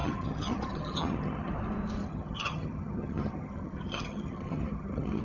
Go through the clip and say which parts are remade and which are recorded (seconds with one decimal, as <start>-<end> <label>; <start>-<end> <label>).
0.0-1.5 remade; 1.5-2.0 recorded; 2.0-5.2 remade